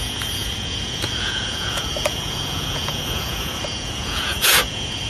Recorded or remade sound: remade